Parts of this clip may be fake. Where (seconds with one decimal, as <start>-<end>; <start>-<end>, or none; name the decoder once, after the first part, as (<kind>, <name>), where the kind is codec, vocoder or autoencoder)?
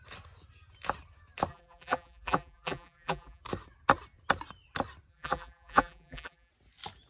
1.5-3.4 (vocoder, BigVGAN v2); 5.1-6.5